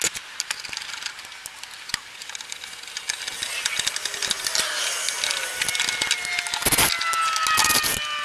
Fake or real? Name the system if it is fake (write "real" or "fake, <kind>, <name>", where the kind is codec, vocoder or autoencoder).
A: real